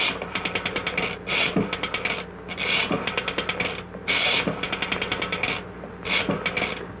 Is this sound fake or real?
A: real